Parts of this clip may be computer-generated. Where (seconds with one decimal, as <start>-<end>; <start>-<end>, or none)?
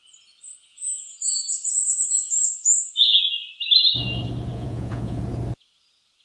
0.7-3.2; 4.5-5.2